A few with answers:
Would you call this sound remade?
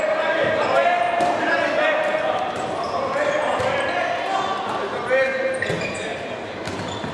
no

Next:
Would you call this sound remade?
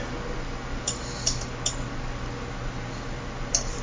no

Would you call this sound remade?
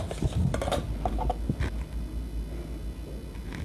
no